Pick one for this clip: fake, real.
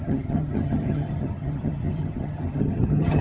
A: fake